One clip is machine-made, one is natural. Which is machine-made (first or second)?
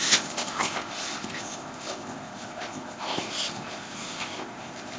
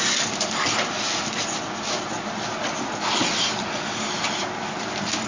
first